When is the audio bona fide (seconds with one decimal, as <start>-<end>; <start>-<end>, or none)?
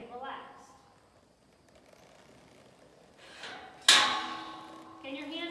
0.0-2.9; 3.7-5.5